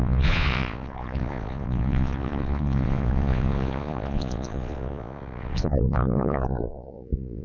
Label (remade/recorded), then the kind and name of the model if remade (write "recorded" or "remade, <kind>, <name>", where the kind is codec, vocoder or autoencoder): remade, vocoder, Vocos